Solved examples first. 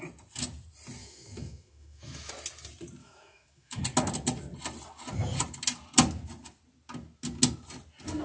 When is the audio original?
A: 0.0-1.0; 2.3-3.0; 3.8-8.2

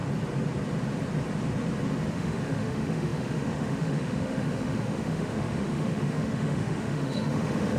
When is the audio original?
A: 0.0-2.1

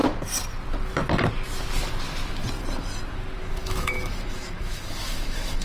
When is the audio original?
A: 0.0-3.4

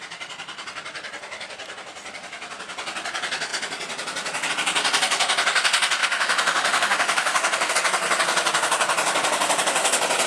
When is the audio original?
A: 0.0-6.0; 7.7-10.3

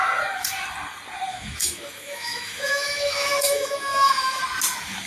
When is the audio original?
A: 0.0-1.3; 4.4-5.1